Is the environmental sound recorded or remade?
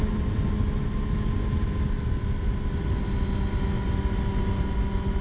recorded